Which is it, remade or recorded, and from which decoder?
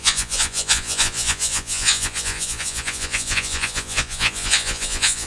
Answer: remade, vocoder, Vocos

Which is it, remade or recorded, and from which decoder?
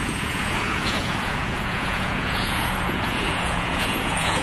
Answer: remade, vocoder, Vocos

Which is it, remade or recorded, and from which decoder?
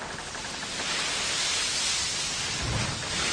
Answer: recorded